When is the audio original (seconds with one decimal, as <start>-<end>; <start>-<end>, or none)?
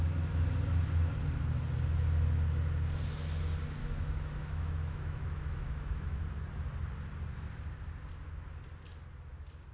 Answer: 0.0-3.8; 6.2-9.7